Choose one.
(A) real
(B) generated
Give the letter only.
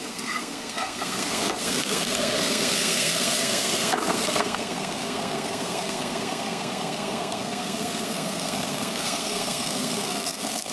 B